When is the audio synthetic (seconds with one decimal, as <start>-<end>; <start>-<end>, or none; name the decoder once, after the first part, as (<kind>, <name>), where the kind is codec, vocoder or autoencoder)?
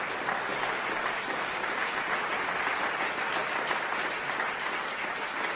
3.4-4.2 (vocoder, BigVGAN v2)